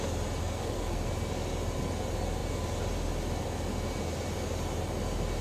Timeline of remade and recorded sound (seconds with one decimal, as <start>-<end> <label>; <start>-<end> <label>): 0.0-0.4 recorded; 0.4-1.1 remade; 1.1-5.4 recorded